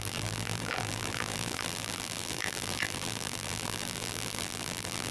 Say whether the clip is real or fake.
fake